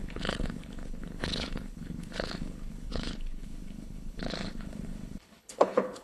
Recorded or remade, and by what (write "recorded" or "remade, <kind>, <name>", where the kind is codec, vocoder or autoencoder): remade, codec, HILCodec